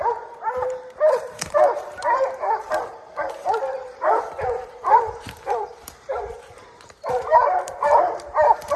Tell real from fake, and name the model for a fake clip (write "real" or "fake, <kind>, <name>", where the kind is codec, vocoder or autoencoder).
fake, vocoder, BigVGAN v2